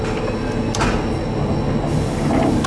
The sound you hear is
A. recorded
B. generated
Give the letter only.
A